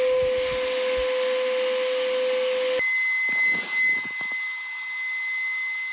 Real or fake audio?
real